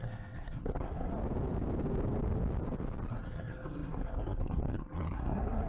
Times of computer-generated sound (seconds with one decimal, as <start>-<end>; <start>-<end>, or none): 0.0-1.1; 3.1-5.7